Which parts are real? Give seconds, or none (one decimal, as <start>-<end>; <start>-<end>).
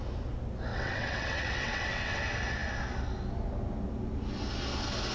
0.0-0.7; 2.2-5.1